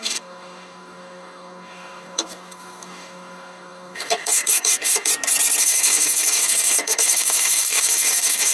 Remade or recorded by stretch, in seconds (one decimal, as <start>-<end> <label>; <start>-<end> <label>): 0.0-5.1 remade; 5.1-5.6 recorded; 5.6-8.5 remade